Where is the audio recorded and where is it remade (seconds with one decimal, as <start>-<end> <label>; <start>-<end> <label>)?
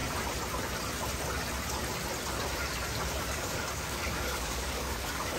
0.0-3.2 recorded; 3.2-5.4 remade